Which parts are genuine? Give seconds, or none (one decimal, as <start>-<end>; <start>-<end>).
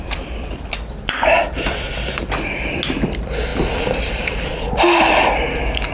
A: 0.0-5.9